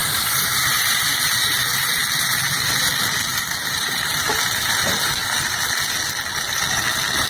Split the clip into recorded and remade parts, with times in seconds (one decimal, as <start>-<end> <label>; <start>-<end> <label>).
0.0-1.5 remade; 1.5-2.3 recorded; 2.3-2.9 remade; 2.9-3.3 recorded; 3.3-5.1 remade; 5.1-7.3 recorded